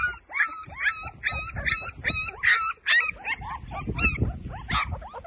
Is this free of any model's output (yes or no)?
yes